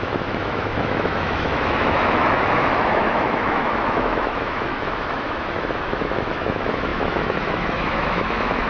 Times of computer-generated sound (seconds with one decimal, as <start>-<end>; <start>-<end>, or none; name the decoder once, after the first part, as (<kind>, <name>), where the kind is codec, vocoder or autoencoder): 0.0-8.7 (autoencoder, DAC-VAE)